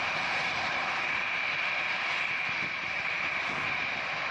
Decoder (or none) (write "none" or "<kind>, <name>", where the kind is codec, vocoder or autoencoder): vocoder, BigVGAN v2